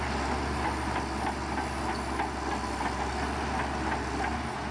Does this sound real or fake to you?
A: real